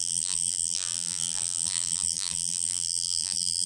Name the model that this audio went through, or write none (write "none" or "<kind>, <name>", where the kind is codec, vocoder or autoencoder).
vocoder, BigVGAN v2